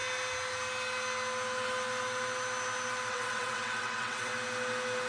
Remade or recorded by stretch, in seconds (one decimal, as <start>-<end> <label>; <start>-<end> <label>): 0.0-3.1 recorded; 3.1-4.3 remade; 4.3-5.1 recorded